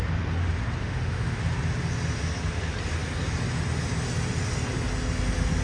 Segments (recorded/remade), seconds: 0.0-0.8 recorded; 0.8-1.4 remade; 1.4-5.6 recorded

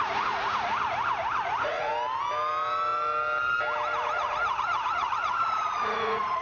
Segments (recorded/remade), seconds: 0.0-1.9 remade; 1.9-4.0 recorded; 4.0-6.4 remade

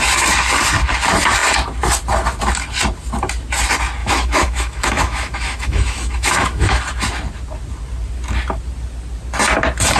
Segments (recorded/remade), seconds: 0.0-4.0 recorded; 4.0-6.8 remade; 6.8-10.0 recorded

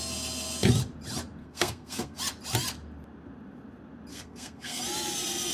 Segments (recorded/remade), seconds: 0.0-1.4 recorded; 1.4-2.2 remade; 2.2-4.1 recorded; 4.1-4.8 remade; 4.8-5.5 recorded